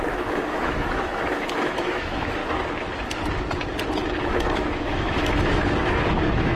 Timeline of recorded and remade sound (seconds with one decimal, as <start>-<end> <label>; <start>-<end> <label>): 0.0-2.4 remade; 2.4-4.2 recorded; 4.2-6.6 remade